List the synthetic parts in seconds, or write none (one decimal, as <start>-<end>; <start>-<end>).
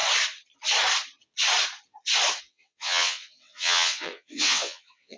2.4-5.2